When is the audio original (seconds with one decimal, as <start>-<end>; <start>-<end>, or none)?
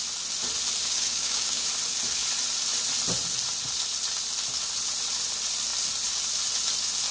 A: 0.0-0.8; 1.7-7.1